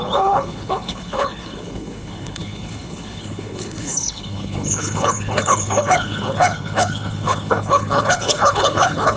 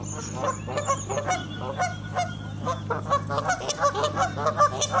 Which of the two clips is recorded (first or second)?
second